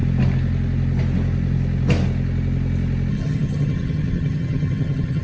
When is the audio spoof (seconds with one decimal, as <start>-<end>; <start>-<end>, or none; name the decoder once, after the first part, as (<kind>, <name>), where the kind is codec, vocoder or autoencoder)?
3.1-5.2 (vocoder, HiFi-GAN)

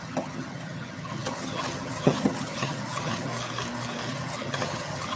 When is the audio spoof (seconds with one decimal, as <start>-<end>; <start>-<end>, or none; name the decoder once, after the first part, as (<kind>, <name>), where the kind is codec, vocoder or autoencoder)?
0.0-3.3 (vocoder, HiFi-GAN); 4.1-5.2

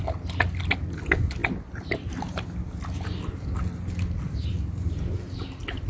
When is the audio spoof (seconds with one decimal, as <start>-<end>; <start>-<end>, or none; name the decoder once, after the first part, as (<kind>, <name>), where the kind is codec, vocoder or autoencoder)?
none

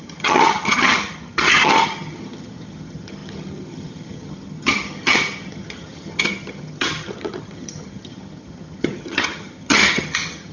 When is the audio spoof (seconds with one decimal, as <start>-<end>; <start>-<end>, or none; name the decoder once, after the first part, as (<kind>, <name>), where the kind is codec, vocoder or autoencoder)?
0.0-10.5 (vocoder, HiFi-GAN)

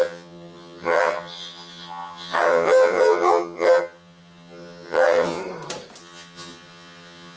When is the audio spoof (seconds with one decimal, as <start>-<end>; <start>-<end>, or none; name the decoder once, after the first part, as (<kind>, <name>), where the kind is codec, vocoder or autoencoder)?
0.0-5.4 (vocoder, HiFi-GAN); 6.0-7.4

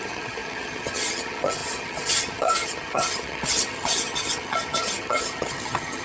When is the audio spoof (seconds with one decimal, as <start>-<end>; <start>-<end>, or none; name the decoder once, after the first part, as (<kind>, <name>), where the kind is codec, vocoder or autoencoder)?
0.0-6.0 (vocoder, HiFi-GAN)

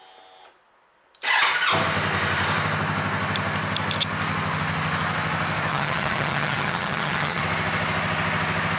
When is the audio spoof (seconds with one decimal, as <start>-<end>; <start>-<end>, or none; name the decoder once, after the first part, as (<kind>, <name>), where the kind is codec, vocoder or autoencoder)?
5.7-7.4 (vocoder, HiFi-GAN)